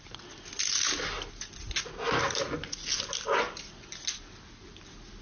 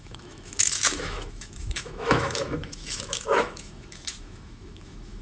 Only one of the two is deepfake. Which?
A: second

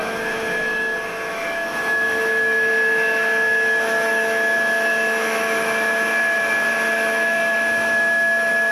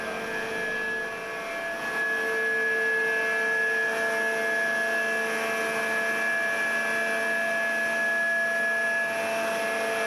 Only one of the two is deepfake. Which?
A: first